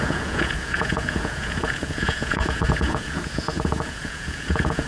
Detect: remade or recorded remade